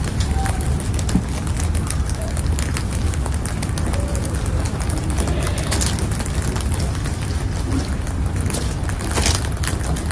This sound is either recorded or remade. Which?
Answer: recorded